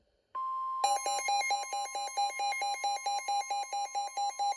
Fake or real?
real